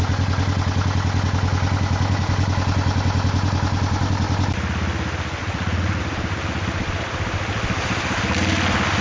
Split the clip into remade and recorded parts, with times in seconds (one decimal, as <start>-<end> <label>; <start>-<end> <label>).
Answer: 0.0-5.4 recorded; 5.4-6.0 remade; 6.0-9.0 recorded